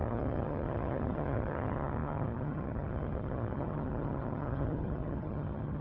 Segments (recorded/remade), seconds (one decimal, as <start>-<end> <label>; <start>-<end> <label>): 0.0-5.8 remade